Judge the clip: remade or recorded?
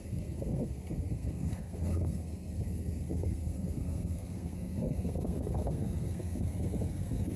remade